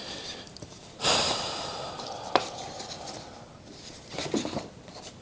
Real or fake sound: fake